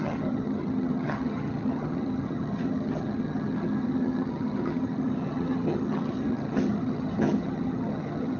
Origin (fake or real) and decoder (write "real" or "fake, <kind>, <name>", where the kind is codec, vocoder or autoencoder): fake, vocoder, HiFi-GAN